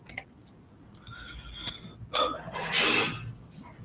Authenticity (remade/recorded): recorded